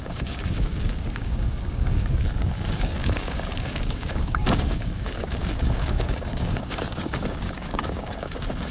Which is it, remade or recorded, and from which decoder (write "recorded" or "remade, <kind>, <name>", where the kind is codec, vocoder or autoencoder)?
remade, codec, DAC